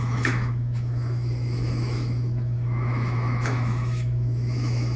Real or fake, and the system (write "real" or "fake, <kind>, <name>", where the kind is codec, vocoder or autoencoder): fake, autoencoder, DAC-VAE